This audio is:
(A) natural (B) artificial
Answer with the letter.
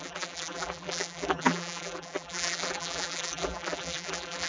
B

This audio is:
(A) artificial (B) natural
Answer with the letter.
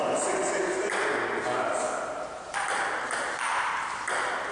B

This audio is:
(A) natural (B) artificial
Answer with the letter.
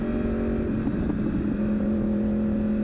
A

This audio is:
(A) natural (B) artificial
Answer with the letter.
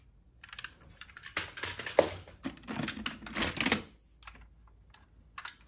A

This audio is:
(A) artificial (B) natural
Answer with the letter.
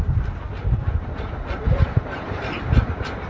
B